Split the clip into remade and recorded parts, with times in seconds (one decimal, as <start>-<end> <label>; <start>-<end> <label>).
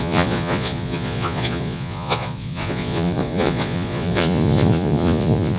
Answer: 0.0-5.6 remade